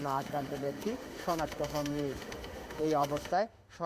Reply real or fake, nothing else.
fake